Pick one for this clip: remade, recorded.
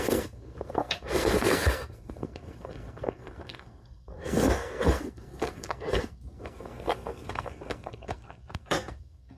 remade